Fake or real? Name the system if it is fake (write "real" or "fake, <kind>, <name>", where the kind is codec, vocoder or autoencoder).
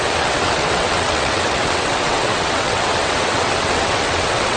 fake, vocoder, WaveNeXt